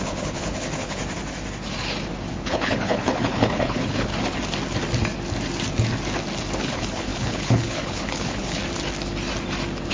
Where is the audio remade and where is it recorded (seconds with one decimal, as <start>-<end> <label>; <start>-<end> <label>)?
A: 0.0-1.0 remade; 1.0-2.3 recorded; 2.3-4.1 remade; 4.1-6.6 recorded; 6.6-8.6 remade; 8.6-9.9 recorded